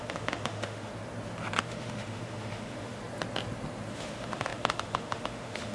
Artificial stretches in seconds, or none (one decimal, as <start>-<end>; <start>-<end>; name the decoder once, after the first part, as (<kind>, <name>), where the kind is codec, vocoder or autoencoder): 0.0-0.9 (autoencoder, DAC-VAE); 1.6-3.0; 3.9-5.7